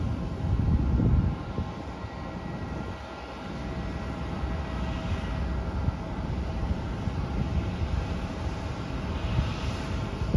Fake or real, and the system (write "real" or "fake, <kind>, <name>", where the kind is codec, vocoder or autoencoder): real